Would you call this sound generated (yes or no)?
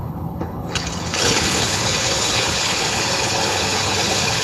yes